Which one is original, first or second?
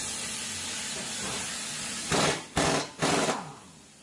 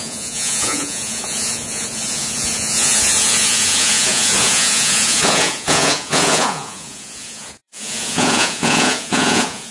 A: first